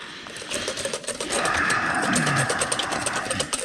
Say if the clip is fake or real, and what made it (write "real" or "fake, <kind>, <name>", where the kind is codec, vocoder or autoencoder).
fake, vocoder, BigVGAN v2